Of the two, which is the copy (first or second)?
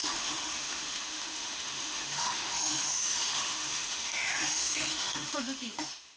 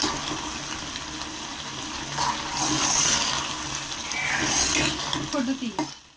first